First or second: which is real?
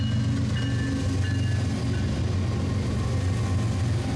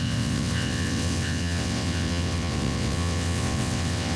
first